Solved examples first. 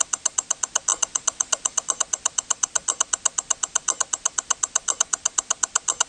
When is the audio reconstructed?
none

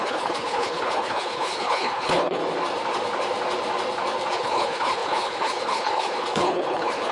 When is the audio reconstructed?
0.0-2.4 (codec, HILCodec); 4.3-7.1

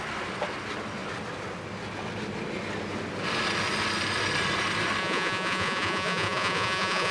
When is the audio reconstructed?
5.0-7.1 (vocoder, Vocos)

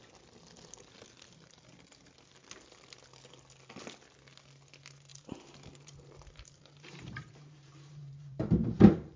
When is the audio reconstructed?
5.1-9.2 (vocoder, BigVGAN v2)

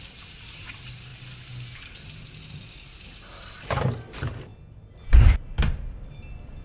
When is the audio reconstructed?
none

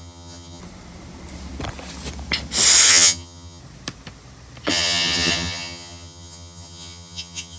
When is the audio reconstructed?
0.0-0.6 (vocoder, HiFi-GAN); 2.9-3.6; 4.7-7.6